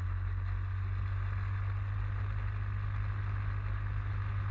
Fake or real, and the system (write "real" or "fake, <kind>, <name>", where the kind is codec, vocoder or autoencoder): real